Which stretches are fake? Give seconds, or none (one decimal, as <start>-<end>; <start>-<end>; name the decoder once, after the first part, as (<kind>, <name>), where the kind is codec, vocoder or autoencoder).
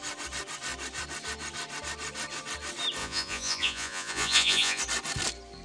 3.0-4.8 (vocoder, Vocos)